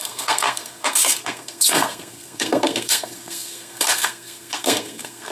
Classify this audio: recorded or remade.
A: remade